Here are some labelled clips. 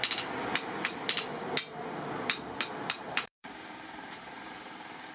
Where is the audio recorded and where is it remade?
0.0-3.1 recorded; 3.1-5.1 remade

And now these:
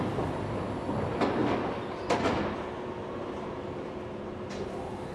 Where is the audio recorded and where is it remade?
0.0-5.1 recorded

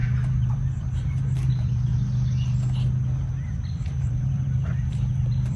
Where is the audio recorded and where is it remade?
0.0-1.9 remade; 1.9-3.3 recorded; 3.3-5.6 remade